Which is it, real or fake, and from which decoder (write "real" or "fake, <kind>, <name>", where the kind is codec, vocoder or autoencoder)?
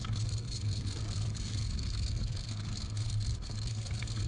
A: fake, codec, SNAC